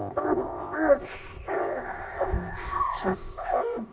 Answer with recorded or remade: remade